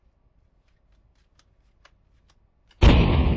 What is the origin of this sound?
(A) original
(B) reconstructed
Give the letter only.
A